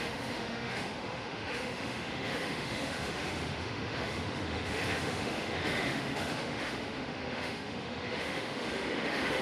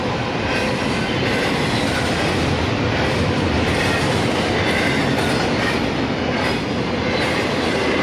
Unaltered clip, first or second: second